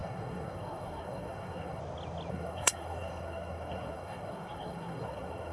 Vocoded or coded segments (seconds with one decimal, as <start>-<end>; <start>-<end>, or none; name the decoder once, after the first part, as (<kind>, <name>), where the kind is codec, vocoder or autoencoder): 0.0-1.8 (codec, SNAC); 2.3-5.5